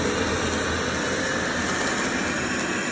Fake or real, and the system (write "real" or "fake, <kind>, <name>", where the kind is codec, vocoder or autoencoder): real